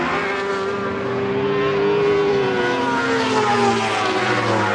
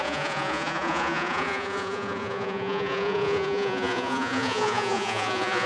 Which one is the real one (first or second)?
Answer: first